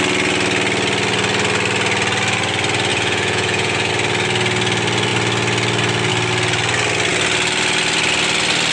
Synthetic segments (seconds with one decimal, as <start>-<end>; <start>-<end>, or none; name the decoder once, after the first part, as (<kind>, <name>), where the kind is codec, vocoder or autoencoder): 2.9-3.9 (vocoder, Vocos)